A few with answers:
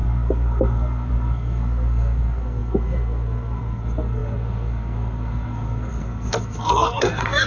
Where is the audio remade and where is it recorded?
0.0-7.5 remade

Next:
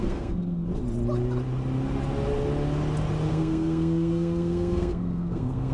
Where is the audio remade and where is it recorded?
0.0-0.7 remade; 0.7-3.3 recorded; 3.3-5.7 remade

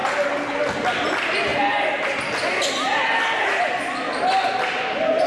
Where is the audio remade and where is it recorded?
0.0-5.3 recorded